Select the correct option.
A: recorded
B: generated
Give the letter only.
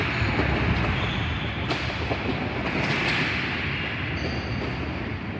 A